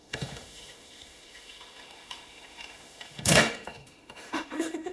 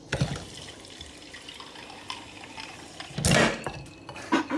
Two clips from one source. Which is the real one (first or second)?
second